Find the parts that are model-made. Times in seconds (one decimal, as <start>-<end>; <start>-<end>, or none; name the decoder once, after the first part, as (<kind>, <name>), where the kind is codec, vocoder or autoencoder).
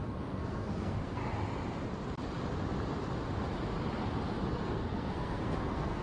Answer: 0.0-1.2 (codec, SNAC); 4.5-6.0